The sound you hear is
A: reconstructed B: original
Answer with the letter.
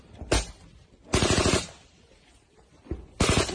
B